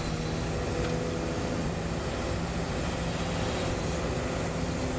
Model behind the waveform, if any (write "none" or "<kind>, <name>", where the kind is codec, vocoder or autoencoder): none